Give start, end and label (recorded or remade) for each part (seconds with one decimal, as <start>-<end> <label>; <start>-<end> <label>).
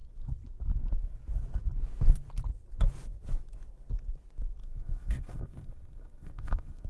0.0-4.6 recorded; 4.6-6.9 remade